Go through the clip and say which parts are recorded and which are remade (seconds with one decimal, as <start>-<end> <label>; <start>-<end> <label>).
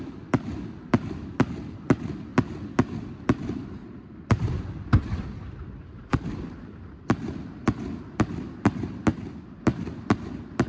0.0-10.7 recorded